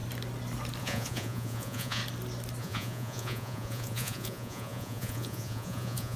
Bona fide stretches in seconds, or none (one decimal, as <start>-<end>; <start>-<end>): 0.0-0.8; 2.0-2.6